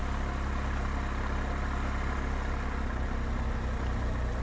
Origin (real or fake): real